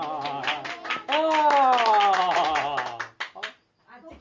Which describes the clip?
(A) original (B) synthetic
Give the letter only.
A